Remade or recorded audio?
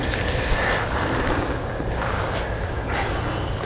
recorded